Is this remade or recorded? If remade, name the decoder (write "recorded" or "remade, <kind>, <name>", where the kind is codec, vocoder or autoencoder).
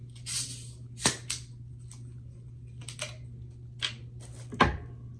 recorded